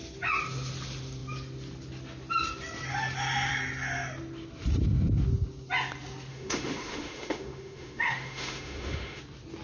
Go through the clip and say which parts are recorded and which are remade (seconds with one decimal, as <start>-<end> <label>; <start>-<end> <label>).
0.0-6.3 recorded; 6.3-9.2 remade; 9.2-9.6 recorded